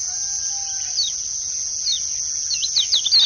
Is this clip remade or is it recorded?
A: recorded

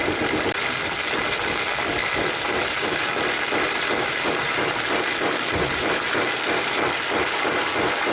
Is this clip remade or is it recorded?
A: recorded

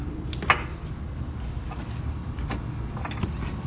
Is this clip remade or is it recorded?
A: recorded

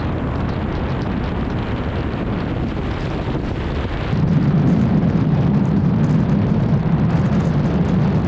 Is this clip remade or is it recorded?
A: recorded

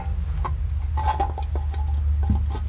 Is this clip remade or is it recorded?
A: recorded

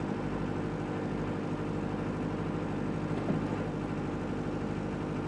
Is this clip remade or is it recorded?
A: recorded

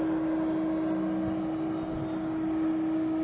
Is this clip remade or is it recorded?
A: recorded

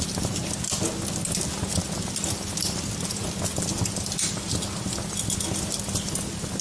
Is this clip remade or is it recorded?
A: recorded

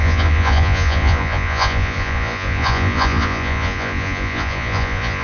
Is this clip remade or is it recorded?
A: remade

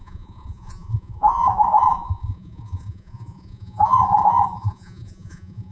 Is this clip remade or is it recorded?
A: remade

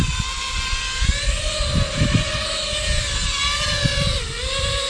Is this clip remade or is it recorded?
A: recorded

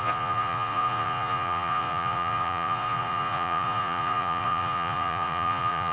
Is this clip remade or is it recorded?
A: remade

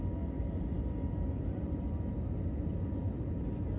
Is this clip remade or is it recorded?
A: recorded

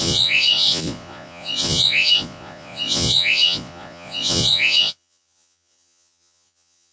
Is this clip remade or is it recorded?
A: remade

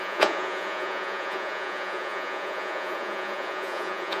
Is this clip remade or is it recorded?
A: remade